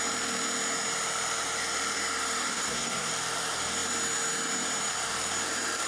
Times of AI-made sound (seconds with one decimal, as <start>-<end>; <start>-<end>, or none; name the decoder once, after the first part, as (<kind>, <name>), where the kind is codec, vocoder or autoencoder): 2.5-3.1 (codec, SNAC)